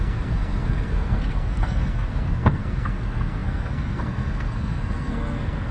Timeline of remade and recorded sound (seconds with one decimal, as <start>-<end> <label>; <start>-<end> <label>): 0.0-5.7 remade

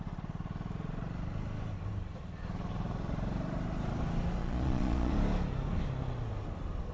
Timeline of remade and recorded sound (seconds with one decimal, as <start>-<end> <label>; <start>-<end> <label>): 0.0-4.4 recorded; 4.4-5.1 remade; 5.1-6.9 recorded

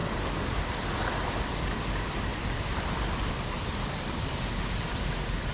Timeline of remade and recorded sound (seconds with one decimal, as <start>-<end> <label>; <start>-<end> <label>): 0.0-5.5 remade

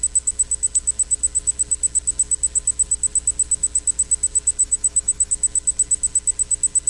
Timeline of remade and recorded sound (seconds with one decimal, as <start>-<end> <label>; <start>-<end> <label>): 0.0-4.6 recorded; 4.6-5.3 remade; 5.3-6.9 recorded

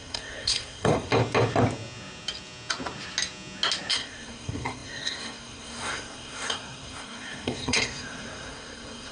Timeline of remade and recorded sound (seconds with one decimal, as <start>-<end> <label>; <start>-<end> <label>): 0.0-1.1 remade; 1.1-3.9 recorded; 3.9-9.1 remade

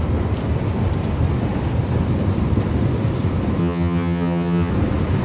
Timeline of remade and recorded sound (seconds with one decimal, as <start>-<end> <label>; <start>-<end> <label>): 0.0-3.6 recorded; 3.6-4.7 remade; 4.7-5.2 recorded